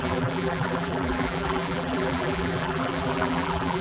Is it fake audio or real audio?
fake